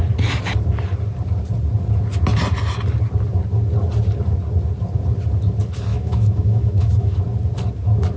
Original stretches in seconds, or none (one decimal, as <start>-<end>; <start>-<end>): 0.0-5.9; 7.2-8.2